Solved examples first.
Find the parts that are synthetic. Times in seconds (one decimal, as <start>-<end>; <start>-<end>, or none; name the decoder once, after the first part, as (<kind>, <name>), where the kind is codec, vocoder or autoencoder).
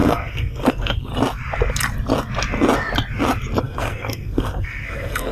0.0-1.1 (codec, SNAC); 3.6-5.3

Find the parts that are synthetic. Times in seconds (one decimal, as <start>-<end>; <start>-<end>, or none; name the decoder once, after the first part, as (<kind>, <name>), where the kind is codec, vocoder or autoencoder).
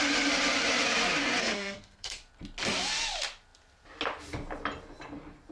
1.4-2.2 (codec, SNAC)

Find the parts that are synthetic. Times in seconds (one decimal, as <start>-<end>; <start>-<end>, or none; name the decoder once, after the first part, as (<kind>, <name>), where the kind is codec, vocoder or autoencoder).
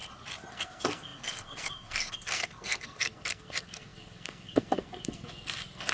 0.5-5.9 (codec, SNAC)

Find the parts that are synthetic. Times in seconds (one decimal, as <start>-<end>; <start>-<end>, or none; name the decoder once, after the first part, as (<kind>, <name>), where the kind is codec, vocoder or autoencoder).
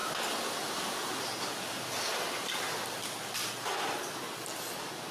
none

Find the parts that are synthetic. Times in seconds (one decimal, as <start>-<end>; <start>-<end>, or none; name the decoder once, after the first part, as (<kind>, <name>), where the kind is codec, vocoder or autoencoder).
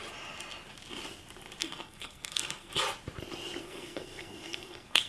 1.6-2.7 (codec, SNAC); 3.6-5.1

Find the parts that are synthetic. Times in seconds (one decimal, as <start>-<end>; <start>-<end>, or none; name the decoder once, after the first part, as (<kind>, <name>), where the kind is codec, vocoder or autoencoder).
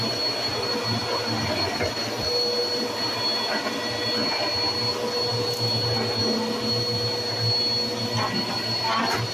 none